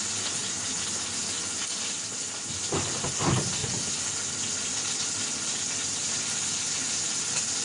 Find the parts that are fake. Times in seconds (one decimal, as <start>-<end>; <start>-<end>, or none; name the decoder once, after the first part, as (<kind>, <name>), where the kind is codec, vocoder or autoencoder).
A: none